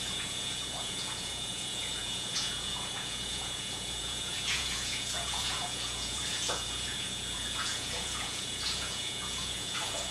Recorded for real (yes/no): no